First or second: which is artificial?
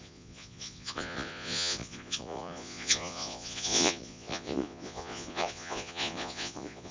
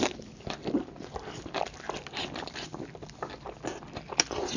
first